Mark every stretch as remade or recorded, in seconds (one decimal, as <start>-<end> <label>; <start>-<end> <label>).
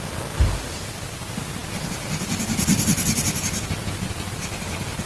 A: 0.0-5.1 recorded